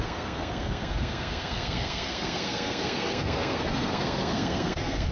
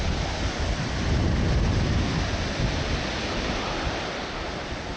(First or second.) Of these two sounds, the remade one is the first